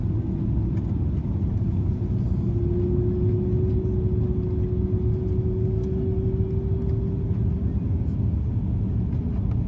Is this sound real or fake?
real